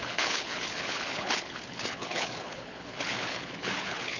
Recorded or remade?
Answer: remade